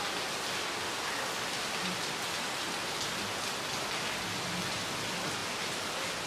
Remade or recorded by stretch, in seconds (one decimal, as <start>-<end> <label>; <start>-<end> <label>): 0.0-5.4 recorded; 5.4-6.3 remade